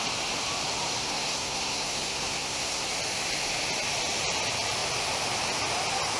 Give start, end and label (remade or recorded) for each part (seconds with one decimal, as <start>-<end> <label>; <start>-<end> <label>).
0.0-1.0 recorded; 1.0-2.9 remade; 2.9-6.2 recorded